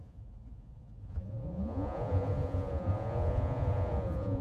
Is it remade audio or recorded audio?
remade